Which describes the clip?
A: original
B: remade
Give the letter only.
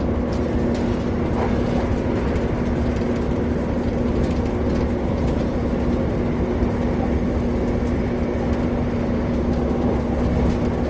A